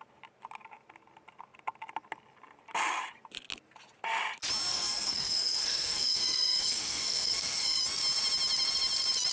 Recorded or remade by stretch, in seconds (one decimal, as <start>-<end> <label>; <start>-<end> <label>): 0.0-4.7 recorded; 4.7-7.8 remade; 7.8-9.3 recorded